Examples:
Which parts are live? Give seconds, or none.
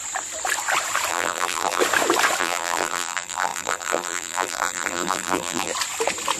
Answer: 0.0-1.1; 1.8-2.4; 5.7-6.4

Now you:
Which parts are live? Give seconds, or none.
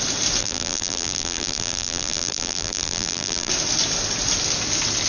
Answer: 0.0-0.4; 3.5-5.1